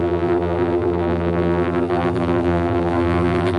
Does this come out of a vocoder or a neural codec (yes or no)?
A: yes